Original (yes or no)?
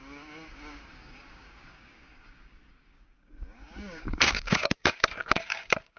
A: no